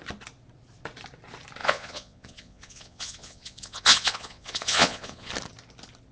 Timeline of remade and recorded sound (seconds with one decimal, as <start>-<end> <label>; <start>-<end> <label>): 0.0-1.6 recorded; 1.6-5.3 remade; 5.3-6.1 recorded